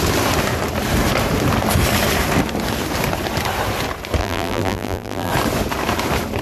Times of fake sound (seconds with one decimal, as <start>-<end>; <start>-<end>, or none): 4.2-5.3